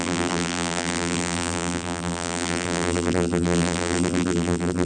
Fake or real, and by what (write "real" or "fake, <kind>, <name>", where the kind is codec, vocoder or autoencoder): fake, vocoder, BigVGAN v2